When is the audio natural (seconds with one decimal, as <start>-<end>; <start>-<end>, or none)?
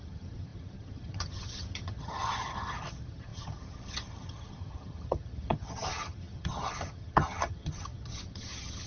none